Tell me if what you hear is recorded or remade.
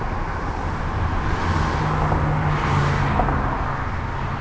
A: recorded